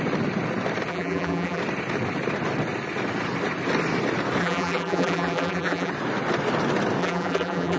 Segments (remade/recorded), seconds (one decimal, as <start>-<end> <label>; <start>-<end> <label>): 0.0-0.9 recorded; 0.9-1.6 remade; 1.6-4.4 recorded; 4.4-5.9 remade; 5.9-7.0 recorded; 7.0-7.8 remade